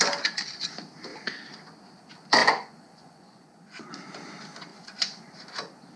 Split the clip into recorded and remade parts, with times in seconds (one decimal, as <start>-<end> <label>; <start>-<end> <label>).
0.0-2.4 recorded; 2.4-3.9 remade; 3.9-4.7 recorded; 4.7-5.3 remade; 5.3-6.0 recorded